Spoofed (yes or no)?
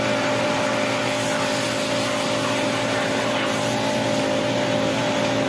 no